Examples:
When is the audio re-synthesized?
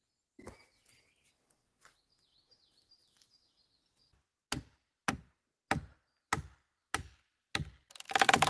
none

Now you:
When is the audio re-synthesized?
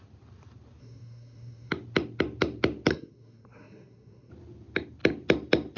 0.8-1.7 (codec, SNAC); 2.9-4.3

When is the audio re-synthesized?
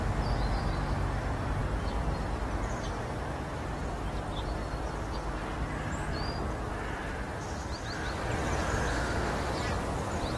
8.9-9.5 (autoencoder, DAC-VAE)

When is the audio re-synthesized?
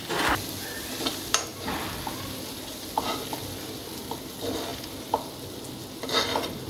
none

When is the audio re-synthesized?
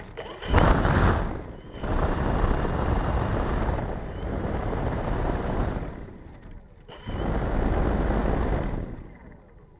1.9-6.1 (vocoder, BigVGAN v2)